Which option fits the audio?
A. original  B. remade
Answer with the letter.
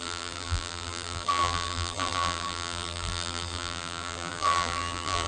B